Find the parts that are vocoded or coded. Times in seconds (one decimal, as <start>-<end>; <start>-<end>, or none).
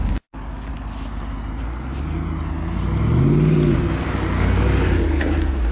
0.0-0.7; 4.0-5.7